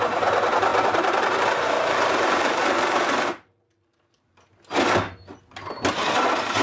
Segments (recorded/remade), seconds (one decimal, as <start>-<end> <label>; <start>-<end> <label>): 0.0-0.7 recorded; 0.7-4.3 remade; 4.3-6.6 recorded